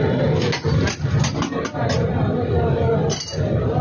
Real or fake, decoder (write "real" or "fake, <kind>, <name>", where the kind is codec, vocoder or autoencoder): real